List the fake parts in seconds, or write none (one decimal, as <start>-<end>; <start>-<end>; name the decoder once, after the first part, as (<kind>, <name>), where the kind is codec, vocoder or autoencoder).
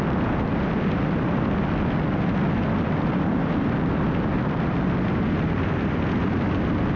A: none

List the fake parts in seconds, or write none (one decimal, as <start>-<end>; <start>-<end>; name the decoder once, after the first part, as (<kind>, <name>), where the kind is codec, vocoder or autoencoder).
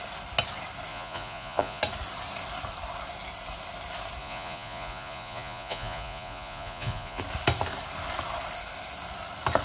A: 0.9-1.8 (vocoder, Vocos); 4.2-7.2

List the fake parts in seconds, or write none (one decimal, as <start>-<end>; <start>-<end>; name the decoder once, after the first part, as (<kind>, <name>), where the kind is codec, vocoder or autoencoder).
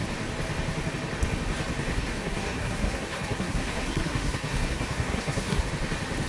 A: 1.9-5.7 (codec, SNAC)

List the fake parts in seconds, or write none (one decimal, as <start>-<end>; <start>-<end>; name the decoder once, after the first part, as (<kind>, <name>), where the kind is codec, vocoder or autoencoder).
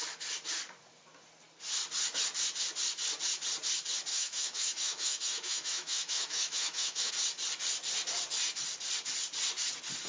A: 4.1-7.1 (autoencoder, DAC-VAE)